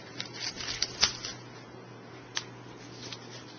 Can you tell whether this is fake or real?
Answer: real